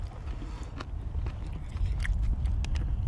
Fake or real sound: real